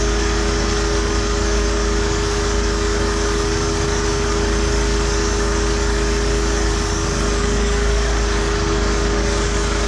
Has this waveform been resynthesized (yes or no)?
yes